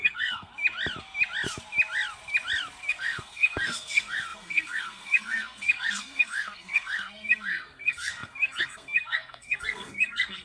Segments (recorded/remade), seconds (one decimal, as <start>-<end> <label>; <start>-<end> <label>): 0.0-0.5 remade; 0.5-2.9 recorded; 2.9-10.4 remade